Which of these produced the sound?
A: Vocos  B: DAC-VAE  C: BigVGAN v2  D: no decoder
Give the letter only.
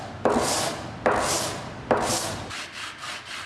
D